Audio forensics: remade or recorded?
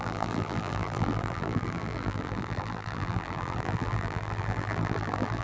remade